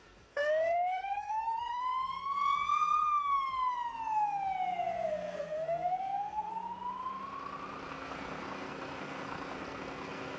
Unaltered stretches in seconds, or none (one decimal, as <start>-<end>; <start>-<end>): 1.9-5.1; 6.5-7.9